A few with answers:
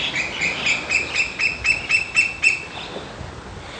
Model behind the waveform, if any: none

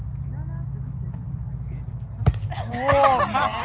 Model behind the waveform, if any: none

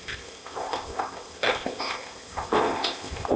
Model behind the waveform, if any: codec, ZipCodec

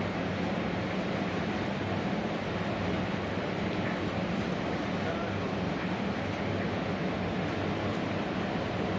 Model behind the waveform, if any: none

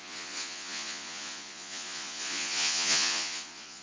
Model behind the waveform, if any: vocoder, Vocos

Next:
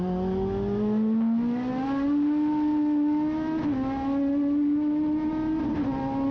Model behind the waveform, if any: none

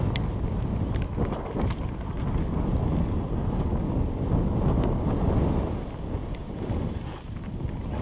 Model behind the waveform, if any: none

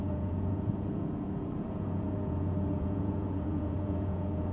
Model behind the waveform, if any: vocoder, Vocos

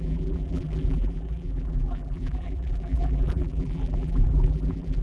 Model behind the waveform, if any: vocoder, BigVGAN v2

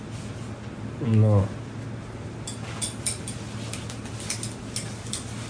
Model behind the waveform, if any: none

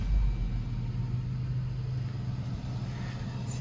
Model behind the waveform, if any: none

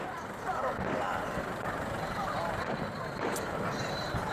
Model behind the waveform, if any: vocoder, BigVGAN v2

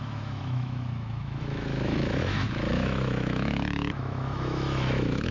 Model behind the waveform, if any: autoencoder, DAC-VAE